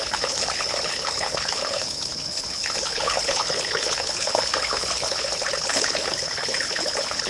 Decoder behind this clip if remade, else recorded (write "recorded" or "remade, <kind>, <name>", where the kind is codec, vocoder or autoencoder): remade, codec, HILCodec